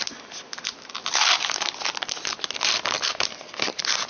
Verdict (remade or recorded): recorded